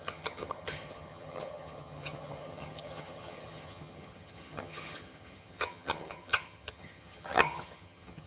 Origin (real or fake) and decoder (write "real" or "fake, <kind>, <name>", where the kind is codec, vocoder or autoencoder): fake, vocoder, HiFi-GAN